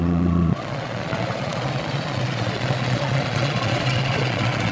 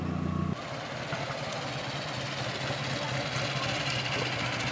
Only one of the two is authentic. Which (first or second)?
second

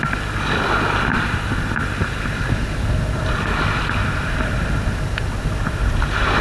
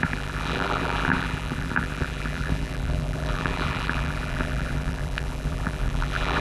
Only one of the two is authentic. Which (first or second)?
first